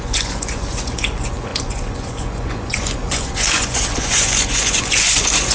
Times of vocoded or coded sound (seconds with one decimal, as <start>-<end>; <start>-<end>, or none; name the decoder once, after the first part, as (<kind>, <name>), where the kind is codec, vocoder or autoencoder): 0.0-5.5 (vocoder, Vocos)